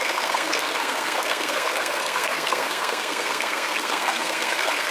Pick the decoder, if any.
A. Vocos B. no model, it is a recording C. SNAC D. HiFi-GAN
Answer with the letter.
C